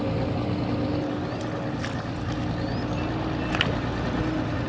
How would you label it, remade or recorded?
recorded